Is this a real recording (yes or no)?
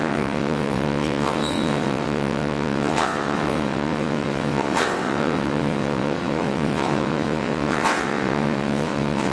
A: no